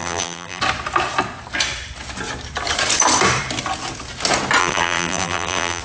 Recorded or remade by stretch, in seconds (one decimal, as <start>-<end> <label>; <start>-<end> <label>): 0.0-0.6 remade; 0.6-4.6 recorded; 4.6-5.8 remade